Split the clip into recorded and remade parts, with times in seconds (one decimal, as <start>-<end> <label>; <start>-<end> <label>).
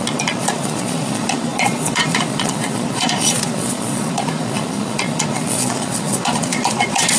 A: 0.0-7.2 remade